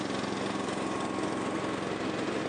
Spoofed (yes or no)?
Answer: no